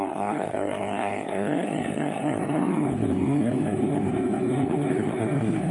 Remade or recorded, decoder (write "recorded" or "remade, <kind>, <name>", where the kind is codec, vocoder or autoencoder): remade, codec, SNAC